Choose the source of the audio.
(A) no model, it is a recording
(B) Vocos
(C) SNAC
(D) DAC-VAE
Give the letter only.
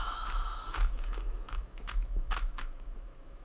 D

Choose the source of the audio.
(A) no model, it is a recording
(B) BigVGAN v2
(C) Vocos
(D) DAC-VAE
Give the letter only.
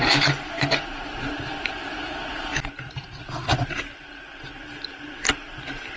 B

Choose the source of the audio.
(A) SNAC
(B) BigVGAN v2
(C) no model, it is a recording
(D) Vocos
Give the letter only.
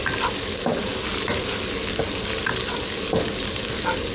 C